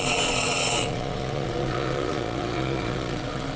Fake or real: fake